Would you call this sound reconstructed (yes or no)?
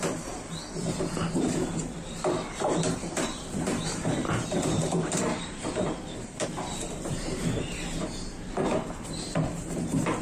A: yes